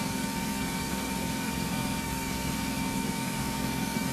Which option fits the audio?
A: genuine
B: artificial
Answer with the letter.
B